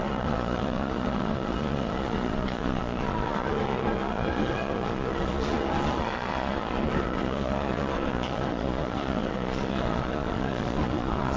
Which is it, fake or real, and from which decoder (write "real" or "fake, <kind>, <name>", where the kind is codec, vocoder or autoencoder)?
fake, vocoder, Vocos